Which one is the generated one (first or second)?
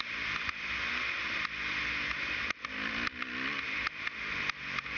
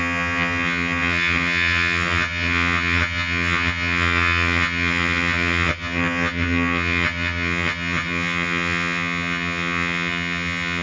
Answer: second